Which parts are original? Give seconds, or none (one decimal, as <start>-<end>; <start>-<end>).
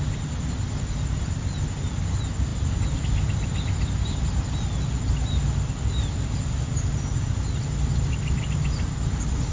0.0-9.5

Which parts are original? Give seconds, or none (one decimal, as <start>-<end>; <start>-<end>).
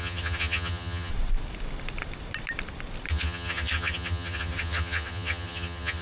1.1-3.1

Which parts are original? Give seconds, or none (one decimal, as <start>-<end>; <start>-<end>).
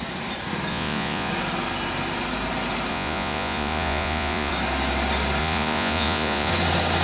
0.0-0.7; 1.3-2.9; 4.5-5.4; 6.5-7.0